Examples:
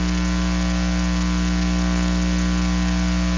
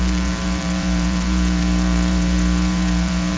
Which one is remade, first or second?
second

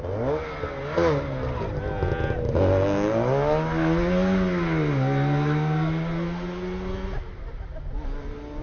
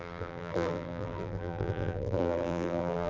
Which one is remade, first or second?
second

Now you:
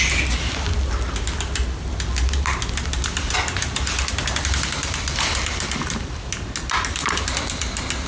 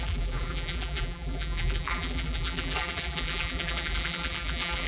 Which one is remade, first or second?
second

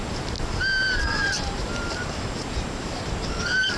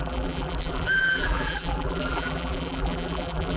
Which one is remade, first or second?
second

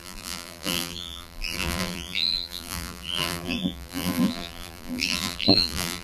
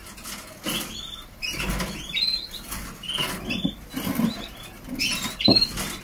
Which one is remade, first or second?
first